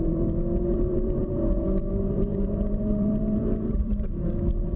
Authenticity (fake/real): fake